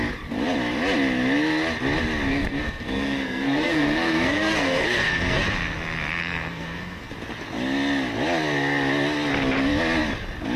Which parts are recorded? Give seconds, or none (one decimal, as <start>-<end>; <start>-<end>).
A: 0.0-2.3; 5.4-6.2; 7.1-10.6